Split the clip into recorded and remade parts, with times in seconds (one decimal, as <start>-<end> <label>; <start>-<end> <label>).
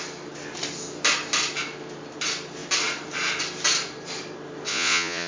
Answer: 0.0-4.7 recorded; 4.7-5.3 remade